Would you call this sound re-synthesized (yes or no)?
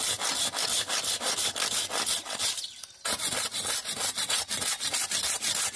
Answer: no